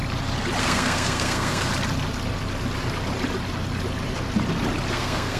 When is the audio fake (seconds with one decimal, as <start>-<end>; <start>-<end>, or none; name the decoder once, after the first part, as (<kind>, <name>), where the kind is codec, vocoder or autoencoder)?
0.6-1.7 (codec, SNAC); 4.9-5.4